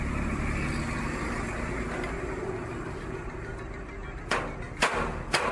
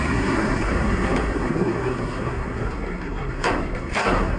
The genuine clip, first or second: first